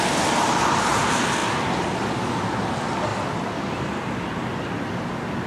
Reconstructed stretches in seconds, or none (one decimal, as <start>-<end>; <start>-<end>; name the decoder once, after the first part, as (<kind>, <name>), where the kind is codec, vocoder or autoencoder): 3.1-4.3 (vocoder, BigVGAN v2)